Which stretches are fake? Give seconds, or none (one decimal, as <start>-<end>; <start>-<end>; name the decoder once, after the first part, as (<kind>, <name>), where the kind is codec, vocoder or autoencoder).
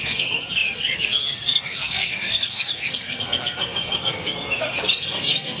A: 0.0-5.6 (codec, SNAC)